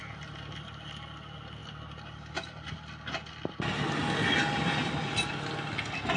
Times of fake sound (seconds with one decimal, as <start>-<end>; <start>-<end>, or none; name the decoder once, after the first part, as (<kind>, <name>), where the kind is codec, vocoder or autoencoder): none